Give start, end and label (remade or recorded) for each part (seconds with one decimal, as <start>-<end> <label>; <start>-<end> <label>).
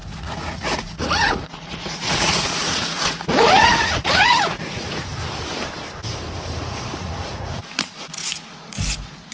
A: 0.0-5.1 remade; 5.1-6.6 recorded; 6.6-9.3 remade